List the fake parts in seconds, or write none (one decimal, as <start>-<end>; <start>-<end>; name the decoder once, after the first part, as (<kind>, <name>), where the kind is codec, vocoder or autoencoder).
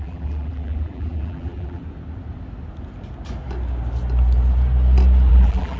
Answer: 0.0-1.8 (vocoder, BigVGAN v2); 5.3-5.8